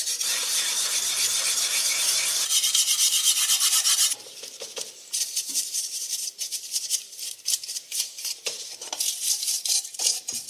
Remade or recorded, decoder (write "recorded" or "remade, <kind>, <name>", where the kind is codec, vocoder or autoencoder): remade, vocoder, BigVGAN v2